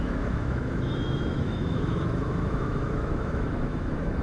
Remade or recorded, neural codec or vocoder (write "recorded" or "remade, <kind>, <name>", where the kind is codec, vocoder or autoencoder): remade, autoencoder, DAC-VAE